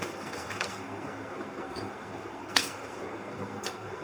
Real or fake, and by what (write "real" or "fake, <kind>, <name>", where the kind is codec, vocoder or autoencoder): fake, codec, SNAC